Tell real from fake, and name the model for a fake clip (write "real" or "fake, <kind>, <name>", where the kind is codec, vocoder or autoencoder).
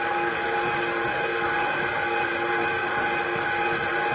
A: real